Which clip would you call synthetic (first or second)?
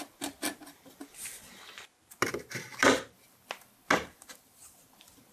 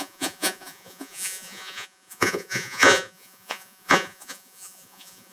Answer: second